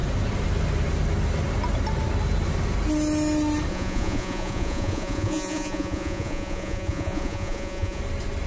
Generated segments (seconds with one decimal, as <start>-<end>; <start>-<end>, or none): 3.7-8.0